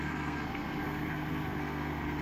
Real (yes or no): no